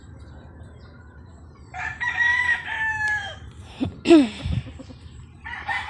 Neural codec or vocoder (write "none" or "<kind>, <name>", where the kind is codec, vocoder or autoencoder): vocoder, BigVGAN v2